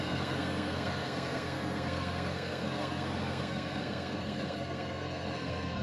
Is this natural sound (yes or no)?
no